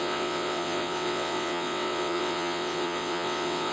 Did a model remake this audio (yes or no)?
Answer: yes